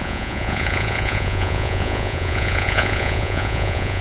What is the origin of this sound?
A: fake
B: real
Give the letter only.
A